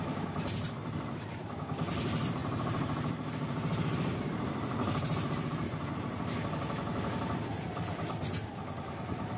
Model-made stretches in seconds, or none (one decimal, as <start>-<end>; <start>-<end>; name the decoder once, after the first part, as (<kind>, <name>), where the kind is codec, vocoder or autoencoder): 0.8-1.4 (vocoder, BigVGAN v2); 2.4-7.4